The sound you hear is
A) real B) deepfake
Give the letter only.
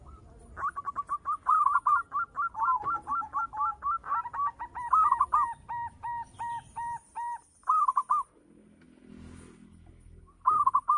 A